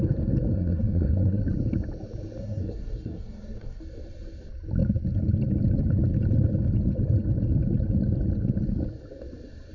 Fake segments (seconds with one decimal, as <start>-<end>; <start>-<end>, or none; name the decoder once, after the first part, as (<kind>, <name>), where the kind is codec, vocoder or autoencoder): 0.5-1.4 (codec, SNAC); 2.4-3.8